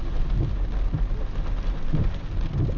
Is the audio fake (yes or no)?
no